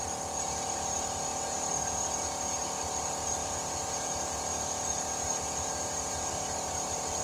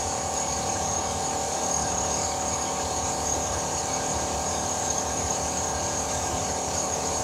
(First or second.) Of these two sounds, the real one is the first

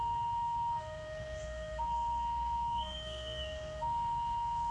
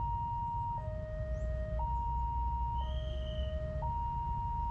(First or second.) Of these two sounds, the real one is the second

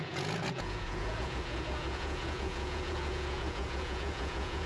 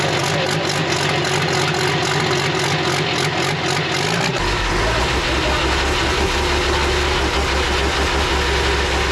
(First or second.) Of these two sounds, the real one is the second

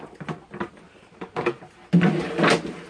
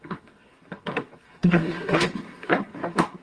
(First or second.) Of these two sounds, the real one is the first